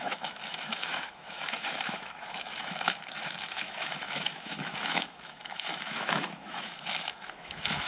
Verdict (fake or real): fake